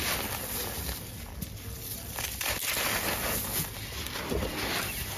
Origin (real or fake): real